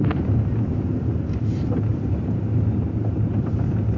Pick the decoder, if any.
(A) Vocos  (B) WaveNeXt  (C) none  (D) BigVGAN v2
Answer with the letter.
C